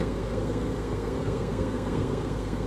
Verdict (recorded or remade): remade